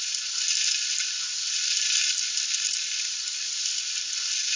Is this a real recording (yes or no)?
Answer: yes